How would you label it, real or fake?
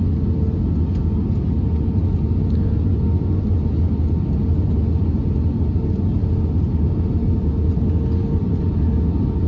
real